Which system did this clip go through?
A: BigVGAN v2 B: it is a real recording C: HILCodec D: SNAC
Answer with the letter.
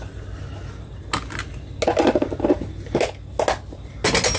B